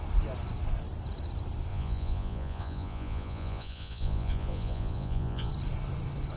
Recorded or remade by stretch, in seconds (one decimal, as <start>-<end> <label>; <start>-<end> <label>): 0.0-1.7 recorded; 1.7-5.5 remade; 5.5-6.4 recorded